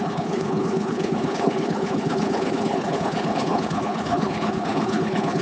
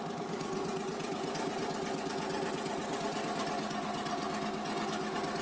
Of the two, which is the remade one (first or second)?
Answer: first